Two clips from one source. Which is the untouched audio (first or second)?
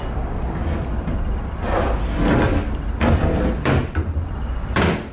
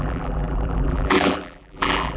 first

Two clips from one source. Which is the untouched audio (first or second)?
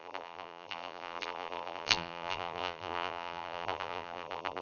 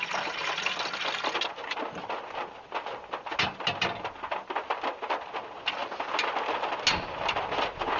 second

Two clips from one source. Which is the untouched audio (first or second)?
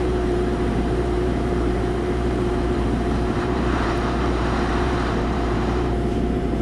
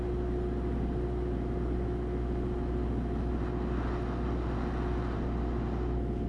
second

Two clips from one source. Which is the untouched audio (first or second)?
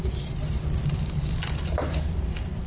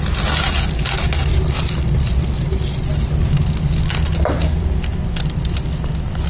second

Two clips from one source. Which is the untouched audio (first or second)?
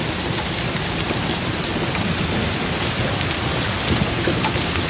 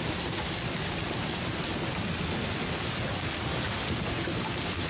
first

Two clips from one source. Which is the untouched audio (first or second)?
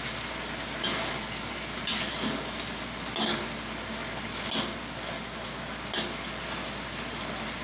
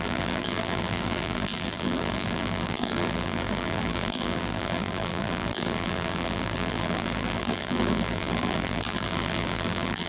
first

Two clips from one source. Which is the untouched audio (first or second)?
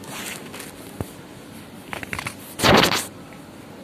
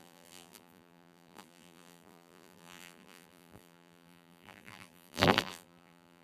first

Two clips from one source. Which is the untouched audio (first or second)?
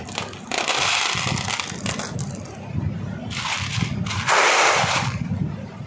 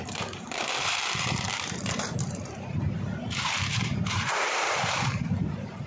first